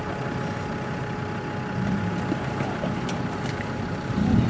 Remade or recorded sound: recorded